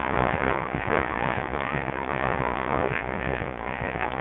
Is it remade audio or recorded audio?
remade